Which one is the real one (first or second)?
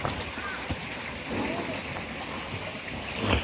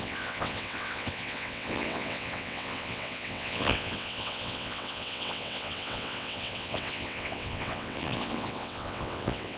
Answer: first